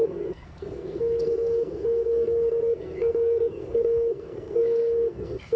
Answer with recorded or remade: remade